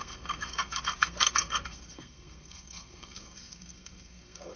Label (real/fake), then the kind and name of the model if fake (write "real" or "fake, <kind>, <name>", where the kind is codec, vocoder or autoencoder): fake, codec, SNAC